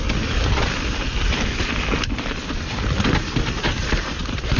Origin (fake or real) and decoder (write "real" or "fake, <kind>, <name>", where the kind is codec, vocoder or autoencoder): real